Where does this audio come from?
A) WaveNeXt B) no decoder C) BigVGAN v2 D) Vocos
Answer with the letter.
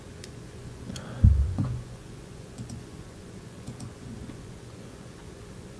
D